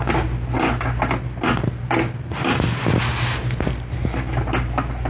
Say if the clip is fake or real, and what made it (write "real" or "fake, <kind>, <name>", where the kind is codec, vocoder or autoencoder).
fake, vocoder, BigVGAN v2